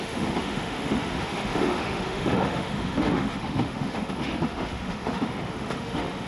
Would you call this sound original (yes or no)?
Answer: no